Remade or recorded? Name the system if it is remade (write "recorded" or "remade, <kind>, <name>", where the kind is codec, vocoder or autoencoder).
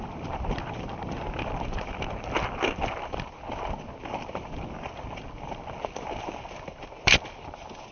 remade, vocoder, BigVGAN v2